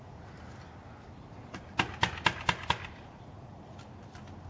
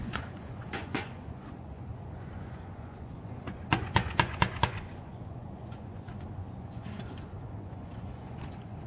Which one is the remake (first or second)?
second